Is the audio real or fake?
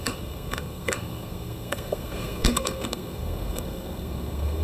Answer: fake